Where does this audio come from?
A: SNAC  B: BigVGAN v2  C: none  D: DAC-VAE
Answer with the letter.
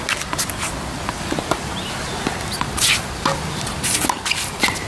C